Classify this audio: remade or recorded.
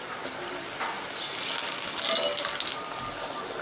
recorded